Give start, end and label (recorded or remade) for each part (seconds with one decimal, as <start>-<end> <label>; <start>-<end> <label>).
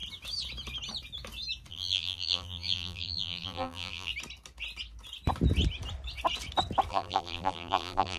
0.0-1.7 recorded; 1.7-4.1 remade; 4.1-6.9 recorded; 6.9-8.2 remade